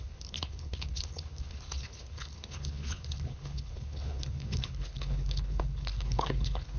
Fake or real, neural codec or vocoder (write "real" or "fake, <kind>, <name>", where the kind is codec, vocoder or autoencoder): fake, codec, HILCodec